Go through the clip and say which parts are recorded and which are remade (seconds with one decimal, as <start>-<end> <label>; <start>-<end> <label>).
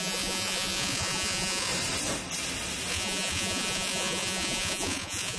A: 0.0-1.7 remade; 1.7-2.9 recorded; 2.9-5.4 remade